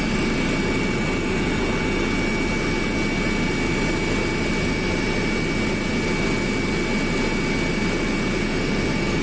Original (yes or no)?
yes